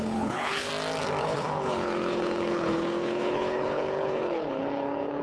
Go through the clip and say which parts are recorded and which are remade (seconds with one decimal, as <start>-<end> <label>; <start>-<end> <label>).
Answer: 0.0-0.7 remade; 0.7-1.2 recorded; 1.2-5.2 remade